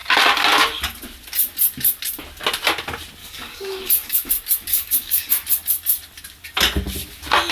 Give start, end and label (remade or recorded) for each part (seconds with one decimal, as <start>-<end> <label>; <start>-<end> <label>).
0.0-3.2 recorded; 3.2-4.3 remade; 4.3-4.7 recorded; 4.7-5.3 remade; 5.3-7.5 recorded